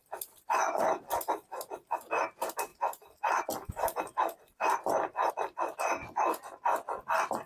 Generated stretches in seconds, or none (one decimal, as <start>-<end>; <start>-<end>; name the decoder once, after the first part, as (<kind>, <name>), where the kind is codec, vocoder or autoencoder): 2.7-5.3 (vocoder, BigVGAN v2)